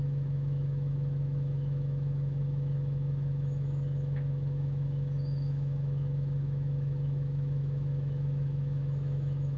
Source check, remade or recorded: remade